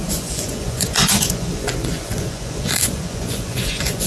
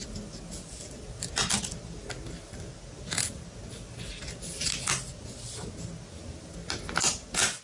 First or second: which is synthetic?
first